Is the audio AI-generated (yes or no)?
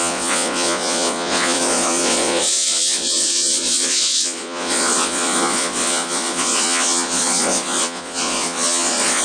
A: yes